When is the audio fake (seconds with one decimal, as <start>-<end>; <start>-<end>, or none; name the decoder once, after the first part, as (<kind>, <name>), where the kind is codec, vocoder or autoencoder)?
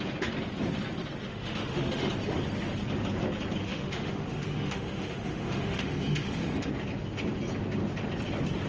1.3-2.1 (autoencoder, DAC-VAE); 3.6-6.7